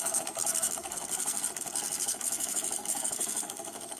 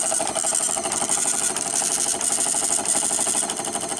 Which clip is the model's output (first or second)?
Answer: first